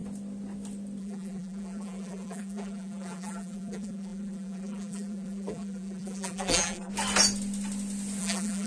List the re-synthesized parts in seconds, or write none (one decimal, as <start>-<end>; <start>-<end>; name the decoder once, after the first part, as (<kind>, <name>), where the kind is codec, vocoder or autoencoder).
1.0-6.9 (vocoder, BigVGAN v2); 8.2-8.7